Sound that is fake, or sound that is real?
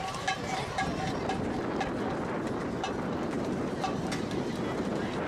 real